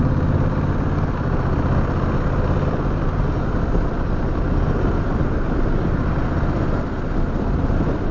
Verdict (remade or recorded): recorded